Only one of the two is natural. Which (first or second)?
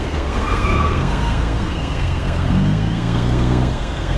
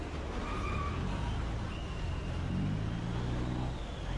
second